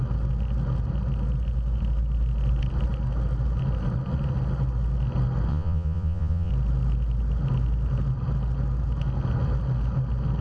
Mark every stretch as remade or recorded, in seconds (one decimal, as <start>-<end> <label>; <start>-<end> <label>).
0.0-5.5 recorded; 5.5-6.5 remade; 6.5-10.4 recorded

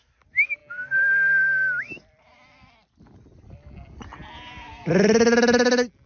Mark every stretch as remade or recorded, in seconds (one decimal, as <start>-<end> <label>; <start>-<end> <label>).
0.0-6.1 recorded